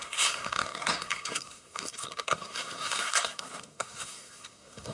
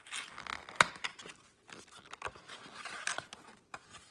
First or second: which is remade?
first